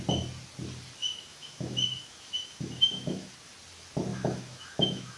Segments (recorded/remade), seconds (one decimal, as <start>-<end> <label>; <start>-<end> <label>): 0.0-1.0 recorded; 1.0-3.3 remade; 3.3-4.1 recorded; 4.1-5.2 remade